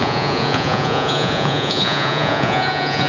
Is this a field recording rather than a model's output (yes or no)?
no